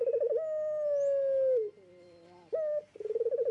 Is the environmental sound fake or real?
real